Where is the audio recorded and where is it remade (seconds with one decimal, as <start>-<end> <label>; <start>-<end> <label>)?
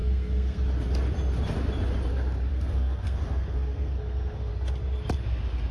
0.0-0.6 remade; 0.6-2.5 recorded; 2.5-4.5 remade; 4.5-5.7 recorded